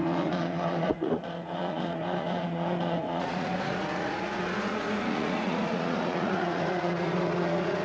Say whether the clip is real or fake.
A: fake